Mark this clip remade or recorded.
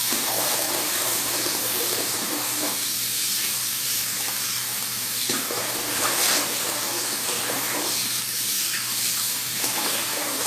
remade